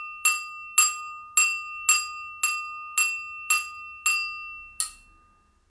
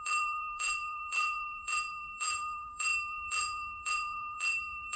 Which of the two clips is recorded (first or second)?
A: first